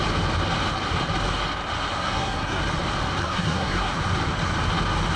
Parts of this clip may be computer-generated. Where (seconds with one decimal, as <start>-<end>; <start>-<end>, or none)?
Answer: 2.0-2.6; 3.2-3.9